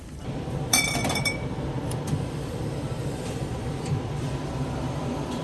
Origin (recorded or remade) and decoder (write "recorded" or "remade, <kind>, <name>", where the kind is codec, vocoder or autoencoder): remade, vocoder, BigVGAN v2